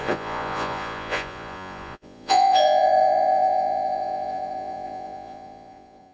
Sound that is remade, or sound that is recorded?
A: remade